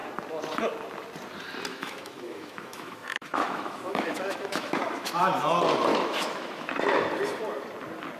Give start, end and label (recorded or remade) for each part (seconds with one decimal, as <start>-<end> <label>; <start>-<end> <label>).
0.0-1.7 recorded; 1.7-5.2 remade; 5.2-5.9 recorded; 5.9-6.7 remade; 6.7-8.2 recorded